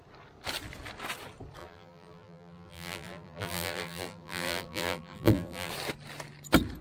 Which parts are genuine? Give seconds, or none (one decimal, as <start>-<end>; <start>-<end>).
0.0-1.6; 5.7-6.8